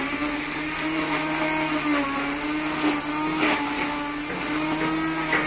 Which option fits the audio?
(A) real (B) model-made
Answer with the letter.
A